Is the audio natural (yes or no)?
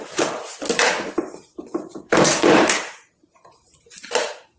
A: yes